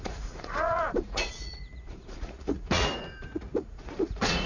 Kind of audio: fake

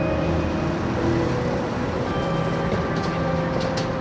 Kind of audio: real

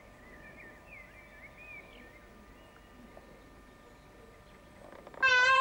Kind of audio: real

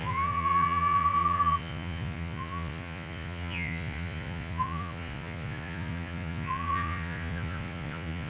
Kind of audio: fake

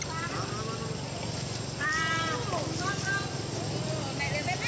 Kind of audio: real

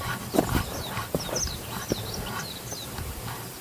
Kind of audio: real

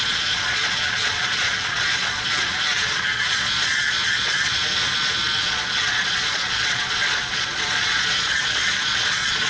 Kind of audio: fake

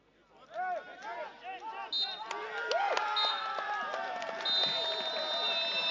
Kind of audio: real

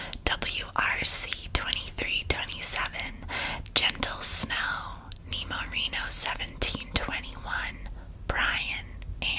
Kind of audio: real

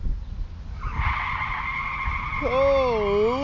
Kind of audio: real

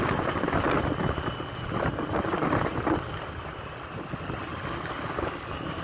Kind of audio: real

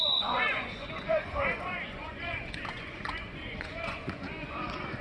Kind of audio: fake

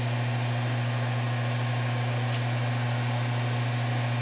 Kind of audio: real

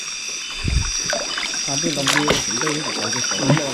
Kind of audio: real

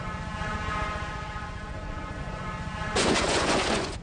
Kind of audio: fake